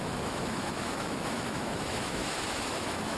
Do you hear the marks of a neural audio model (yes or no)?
yes